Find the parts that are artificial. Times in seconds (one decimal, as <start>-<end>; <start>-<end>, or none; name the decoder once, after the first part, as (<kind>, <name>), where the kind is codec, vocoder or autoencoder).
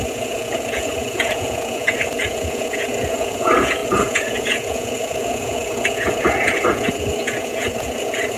0.0-8.4 (vocoder, Vocos)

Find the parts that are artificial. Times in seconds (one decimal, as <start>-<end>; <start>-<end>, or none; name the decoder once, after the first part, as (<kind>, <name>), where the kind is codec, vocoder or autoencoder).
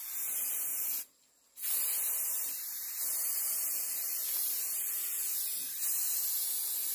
none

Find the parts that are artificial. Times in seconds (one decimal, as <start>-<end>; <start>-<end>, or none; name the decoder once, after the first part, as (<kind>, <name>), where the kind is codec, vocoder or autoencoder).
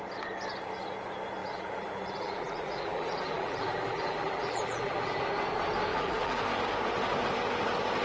1.4-5.2 (vocoder, BigVGAN v2); 5.9-6.4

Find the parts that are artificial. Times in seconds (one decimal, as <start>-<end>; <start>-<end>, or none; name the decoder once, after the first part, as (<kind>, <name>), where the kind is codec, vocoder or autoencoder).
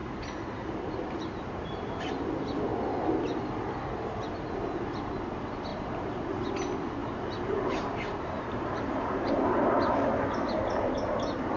0.0-2.2 (vocoder, BigVGAN v2); 5.7-6.3; 7.0-9.3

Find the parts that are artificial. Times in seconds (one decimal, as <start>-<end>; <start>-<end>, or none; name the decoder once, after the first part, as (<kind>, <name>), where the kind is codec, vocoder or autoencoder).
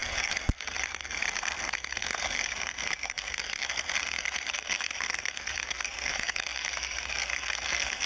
0.0-8.1 (codec, SNAC)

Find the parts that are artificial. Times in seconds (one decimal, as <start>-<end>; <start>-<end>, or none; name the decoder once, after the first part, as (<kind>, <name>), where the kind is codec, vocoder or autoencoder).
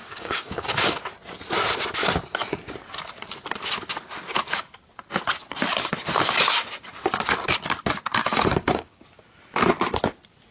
0.0-0.7 (codec, DAC); 8.2-9.0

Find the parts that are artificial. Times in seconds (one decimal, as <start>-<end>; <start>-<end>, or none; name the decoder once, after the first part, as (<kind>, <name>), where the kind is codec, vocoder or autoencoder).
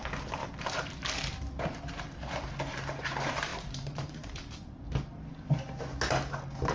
3.5-4.4 (vocoder, BigVGAN v2)